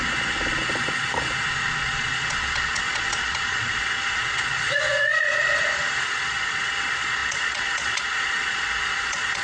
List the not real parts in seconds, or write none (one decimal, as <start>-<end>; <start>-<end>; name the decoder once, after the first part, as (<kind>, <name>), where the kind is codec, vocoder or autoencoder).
0.0-5.4 (vocoder, Vocos); 6.0-9.4